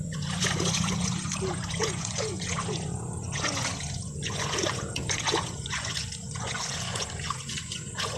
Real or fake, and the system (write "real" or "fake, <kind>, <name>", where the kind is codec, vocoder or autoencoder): fake, vocoder, Vocos